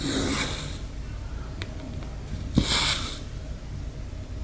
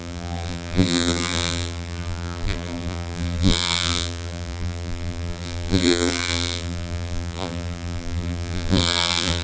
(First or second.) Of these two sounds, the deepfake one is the second